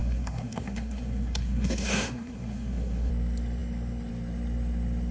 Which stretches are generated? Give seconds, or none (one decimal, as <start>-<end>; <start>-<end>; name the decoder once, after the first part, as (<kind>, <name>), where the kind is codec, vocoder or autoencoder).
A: 0.0-3.1 (codec, SNAC)